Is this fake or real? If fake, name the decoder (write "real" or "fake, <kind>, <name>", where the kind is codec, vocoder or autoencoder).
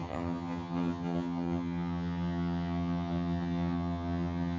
fake, vocoder, HiFi-GAN